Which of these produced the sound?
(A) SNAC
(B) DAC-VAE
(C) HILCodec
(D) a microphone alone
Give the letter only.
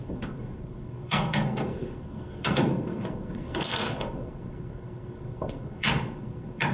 A